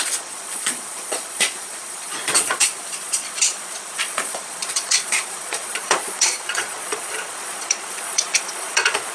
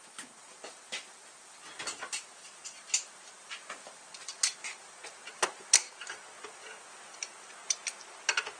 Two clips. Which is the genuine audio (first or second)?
second